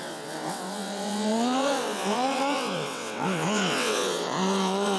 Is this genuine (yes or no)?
no